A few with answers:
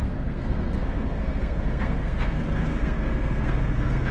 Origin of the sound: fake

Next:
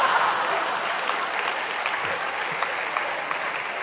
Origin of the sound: real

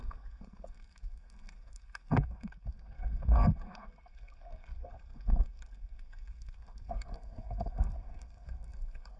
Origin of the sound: fake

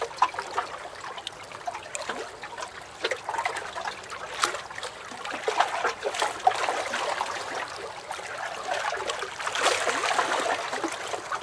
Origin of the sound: real